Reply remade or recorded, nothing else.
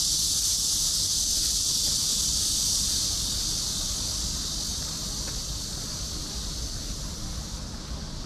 recorded